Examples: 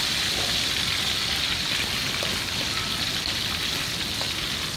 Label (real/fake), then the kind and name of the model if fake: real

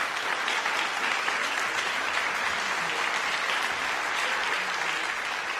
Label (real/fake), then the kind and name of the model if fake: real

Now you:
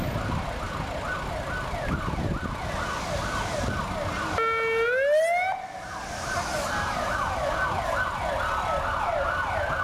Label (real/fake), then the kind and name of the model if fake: real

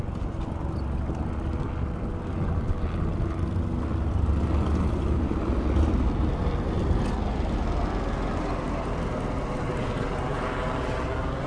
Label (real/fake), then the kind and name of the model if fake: real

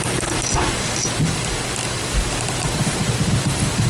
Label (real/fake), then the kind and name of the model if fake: real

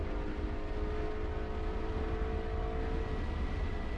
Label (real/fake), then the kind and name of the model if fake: real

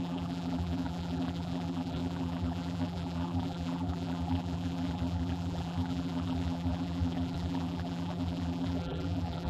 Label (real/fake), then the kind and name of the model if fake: fake, vocoder, BigVGAN v2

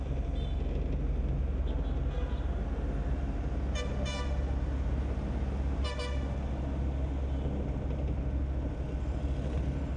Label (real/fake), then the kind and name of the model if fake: real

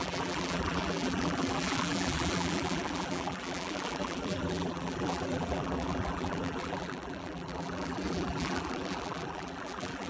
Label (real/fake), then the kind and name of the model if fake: fake, vocoder, BigVGAN v2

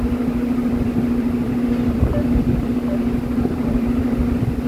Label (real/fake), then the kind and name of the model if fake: fake, vocoder, BigVGAN v2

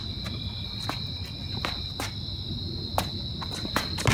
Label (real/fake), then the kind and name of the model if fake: real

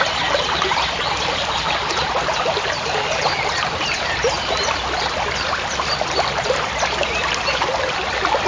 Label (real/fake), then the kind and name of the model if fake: fake, vocoder, BigVGAN v2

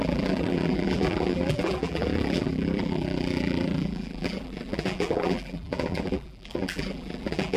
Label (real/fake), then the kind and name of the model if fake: fake, vocoder, BigVGAN v2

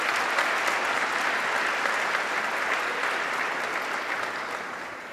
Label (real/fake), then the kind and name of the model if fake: real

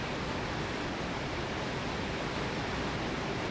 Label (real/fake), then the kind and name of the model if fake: fake, vocoder, BigVGAN v2